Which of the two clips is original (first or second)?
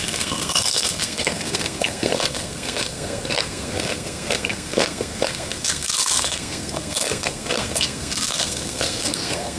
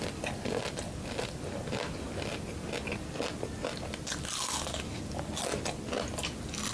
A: second